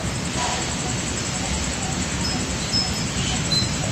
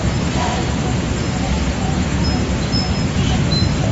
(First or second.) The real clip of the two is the second